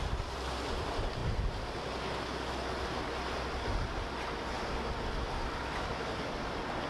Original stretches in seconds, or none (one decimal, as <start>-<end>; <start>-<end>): 0.0-6.9